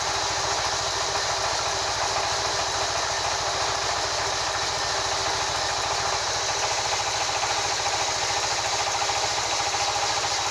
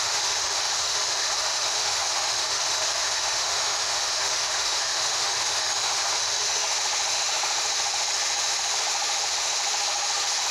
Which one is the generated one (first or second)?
second